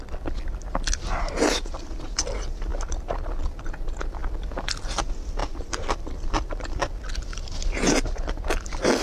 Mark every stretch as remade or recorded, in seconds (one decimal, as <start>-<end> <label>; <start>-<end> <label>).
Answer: 0.0-5.4 recorded; 5.4-6.3 remade; 6.3-9.0 recorded